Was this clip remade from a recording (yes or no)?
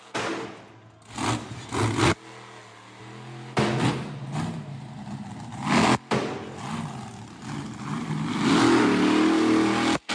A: no